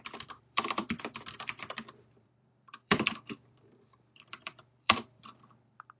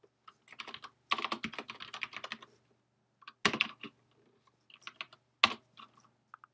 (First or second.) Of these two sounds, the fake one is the first